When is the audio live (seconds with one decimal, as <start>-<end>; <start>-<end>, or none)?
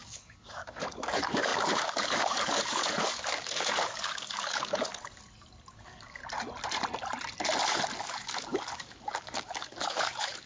4.9-5.7; 6.2-8.0